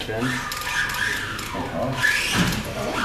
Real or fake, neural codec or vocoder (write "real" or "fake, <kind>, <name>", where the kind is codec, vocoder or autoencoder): real